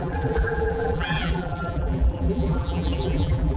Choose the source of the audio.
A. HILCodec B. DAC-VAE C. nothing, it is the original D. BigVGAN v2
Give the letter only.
D